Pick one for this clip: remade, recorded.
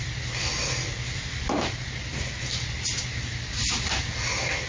recorded